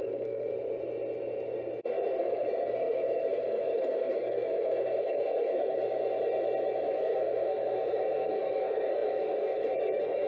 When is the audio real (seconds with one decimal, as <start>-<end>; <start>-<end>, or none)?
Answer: 0.5-1.8; 5.8-6.8